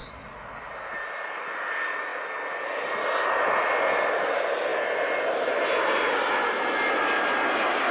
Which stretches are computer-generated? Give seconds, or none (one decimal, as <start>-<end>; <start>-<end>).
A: none

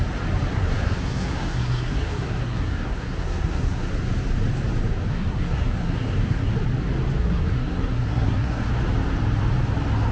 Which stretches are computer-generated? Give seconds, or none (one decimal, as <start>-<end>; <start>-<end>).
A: 0.5-3.9; 5.1-6.5; 7.2-8.7

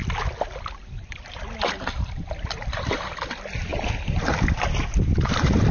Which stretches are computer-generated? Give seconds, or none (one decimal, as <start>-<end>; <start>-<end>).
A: none

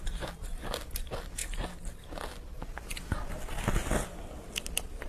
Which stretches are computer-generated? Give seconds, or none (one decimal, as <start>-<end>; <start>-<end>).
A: none

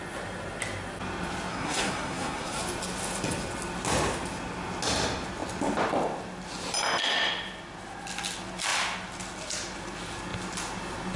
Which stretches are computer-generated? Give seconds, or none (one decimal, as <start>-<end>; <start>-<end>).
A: 1.5-2.6

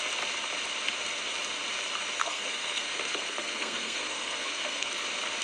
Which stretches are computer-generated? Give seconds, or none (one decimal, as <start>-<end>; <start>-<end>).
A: 2.2-4.9

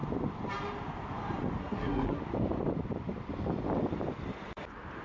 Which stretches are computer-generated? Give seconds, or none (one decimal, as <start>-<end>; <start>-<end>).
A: 1.6-2.2